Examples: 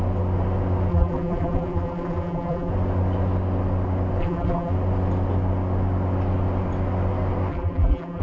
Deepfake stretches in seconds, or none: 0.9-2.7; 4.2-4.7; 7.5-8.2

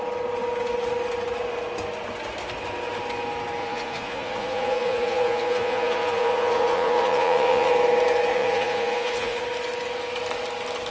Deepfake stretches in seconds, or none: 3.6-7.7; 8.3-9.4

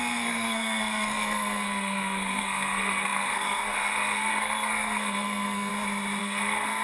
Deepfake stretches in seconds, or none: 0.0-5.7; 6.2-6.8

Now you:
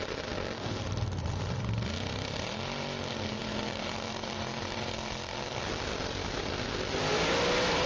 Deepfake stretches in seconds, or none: 1.2-3.0; 3.4-7.1

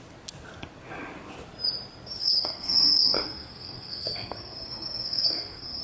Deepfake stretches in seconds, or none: 2.2-5.8